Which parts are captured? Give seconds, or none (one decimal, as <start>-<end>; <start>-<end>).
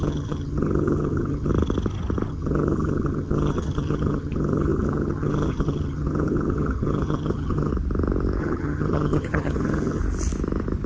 1.5-2.3; 7.7-8.4; 10.0-10.9